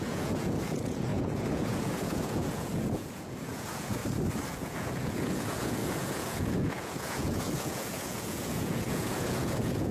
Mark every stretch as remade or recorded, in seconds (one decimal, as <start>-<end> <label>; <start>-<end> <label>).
0.0-4.0 remade; 4.0-4.5 recorded; 4.5-9.9 remade